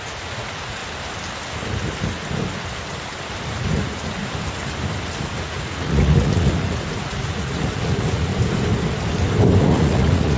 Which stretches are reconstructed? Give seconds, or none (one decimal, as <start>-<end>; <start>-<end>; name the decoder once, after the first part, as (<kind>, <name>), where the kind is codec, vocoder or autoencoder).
0.0-0.8 (vocoder, Vocos); 3.5-4.2; 5.3-8.3; 9.6-10.4